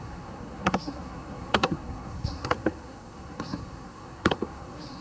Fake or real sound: fake